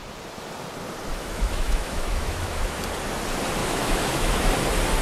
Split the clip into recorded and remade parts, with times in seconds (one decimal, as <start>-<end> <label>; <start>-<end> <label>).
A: 0.0-1.1 recorded; 1.1-2.8 remade; 2.8-3.6 recorded; 3.6-4.5 remade; 4.5-5.0 recorded